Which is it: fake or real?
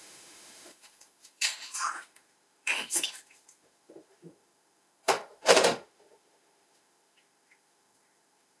fake